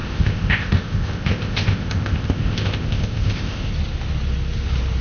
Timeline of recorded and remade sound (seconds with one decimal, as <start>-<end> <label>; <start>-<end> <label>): 0.0-3.7 remade; 3.7-5.0 recorded